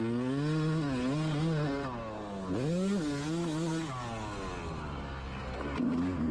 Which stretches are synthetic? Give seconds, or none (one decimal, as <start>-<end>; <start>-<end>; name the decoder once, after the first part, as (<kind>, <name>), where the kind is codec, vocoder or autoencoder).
none

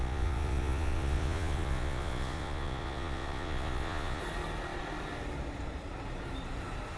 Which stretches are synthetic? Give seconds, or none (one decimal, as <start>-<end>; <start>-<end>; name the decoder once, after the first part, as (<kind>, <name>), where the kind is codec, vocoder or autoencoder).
0.0-4.2 (vocoder, Vocos)

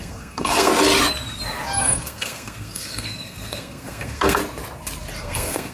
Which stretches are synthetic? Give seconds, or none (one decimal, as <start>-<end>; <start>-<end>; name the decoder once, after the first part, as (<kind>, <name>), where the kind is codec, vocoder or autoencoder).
0.0-0.7 (codec, SNAC); 1.8-4.4; 5.2-5.7

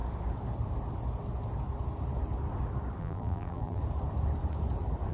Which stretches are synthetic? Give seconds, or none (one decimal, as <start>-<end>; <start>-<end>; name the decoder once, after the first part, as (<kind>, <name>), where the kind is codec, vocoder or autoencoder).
3.0-3.8 (vocoder, BigVGAN v2)

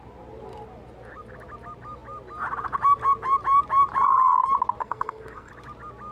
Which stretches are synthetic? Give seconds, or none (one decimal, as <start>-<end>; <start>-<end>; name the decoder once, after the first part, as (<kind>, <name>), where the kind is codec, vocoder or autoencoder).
4.8-5.5 (codec, SNAC)

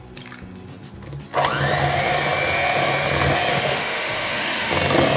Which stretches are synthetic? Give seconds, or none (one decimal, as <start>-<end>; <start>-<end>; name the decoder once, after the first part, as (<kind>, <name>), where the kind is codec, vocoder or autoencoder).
3.5-4.7 (autoencoder, DAC-VAE)